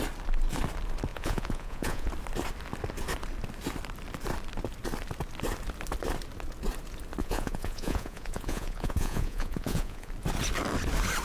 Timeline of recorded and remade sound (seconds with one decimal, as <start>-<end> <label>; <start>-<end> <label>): 0.0-1.1 recorded; 1.1-2.1 remade; 2.1-7.2 recorded; 7.2-10.1 remade; 10.1-11.2 recorded